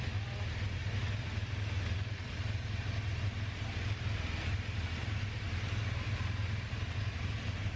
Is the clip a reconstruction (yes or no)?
no